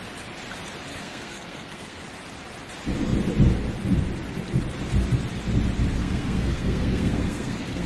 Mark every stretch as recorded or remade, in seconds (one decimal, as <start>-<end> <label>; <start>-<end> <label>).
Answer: 0.0-0.9 recorded; 0.9-2.0 remade; 2.0-6.0 recorded; 6.0-7.9 remade